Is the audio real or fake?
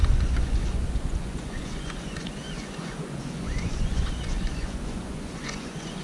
fake